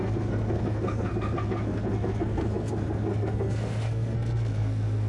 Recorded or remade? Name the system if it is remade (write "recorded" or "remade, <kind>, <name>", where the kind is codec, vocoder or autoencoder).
remade, codec, SNAC